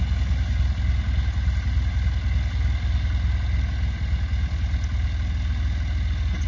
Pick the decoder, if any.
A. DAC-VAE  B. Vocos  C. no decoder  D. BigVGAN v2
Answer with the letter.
C